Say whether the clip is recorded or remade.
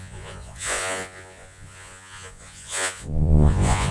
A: remade